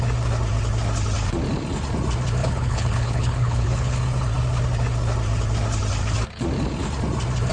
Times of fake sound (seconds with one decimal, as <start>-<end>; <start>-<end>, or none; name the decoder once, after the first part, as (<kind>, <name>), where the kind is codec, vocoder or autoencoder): 2.4-4.0 (codec, HILCodec)